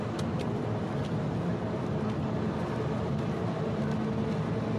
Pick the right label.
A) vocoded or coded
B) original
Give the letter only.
B